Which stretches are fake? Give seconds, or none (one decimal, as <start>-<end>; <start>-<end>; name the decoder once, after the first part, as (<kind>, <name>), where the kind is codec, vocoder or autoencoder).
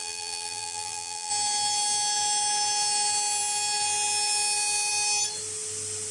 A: 0.0-1.3 (vocoder, BigVGAN v2)